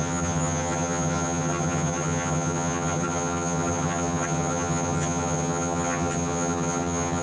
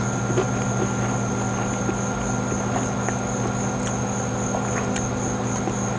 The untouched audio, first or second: second